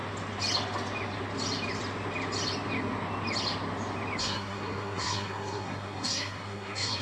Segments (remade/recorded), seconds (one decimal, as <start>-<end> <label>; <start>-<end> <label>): 0.0-4.2 recorded; 4.2-7.0 remade